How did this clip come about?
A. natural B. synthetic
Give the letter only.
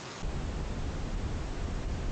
A